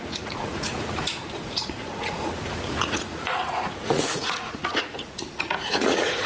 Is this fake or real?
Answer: fake